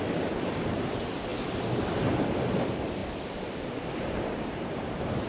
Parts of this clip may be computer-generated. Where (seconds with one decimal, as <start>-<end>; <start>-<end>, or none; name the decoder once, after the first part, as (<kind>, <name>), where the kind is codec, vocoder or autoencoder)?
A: 0.0-1.3 (vocoder, BigVGAN v2); 2.6-3.0; 4.4-5.3